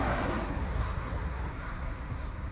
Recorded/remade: remade